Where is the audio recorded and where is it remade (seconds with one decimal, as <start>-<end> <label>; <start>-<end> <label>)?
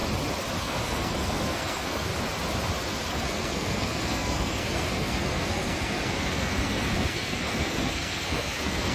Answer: 0.0-0.6 recorded; 0.6-2.1 remade; 2.1-3.1 recorded; 3.1-8.9 remade